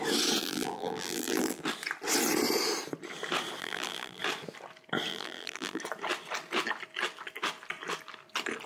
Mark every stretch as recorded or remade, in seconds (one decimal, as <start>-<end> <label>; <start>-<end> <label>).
0.0-0.4 recorded; 0.4-1.6 remade; 1.6-3.6 recorded; 3.6-4.2 remade; 4.2-5.1 recorded; 5.1-5.8 remade; 5.8-8.7 recorded